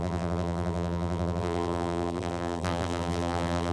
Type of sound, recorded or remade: remade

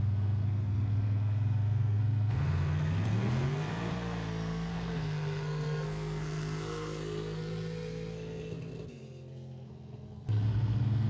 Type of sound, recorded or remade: remade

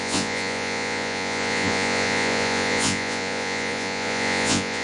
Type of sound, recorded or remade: remade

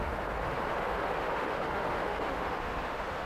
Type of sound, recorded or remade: remade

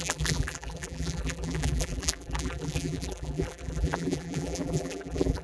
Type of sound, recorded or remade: remade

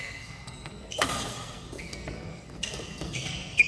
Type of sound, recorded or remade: remade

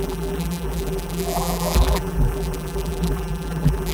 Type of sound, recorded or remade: remade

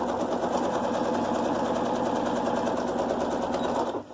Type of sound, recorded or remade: recorded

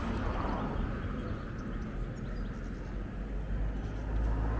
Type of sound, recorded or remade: recorded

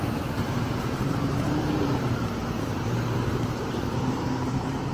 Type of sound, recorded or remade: remade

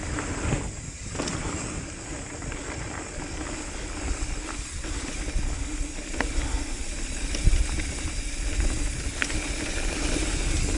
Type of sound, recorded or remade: recorded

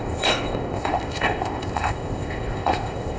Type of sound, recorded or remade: remade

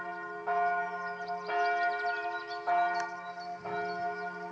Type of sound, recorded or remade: recorded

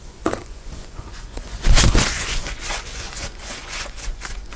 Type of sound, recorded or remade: remade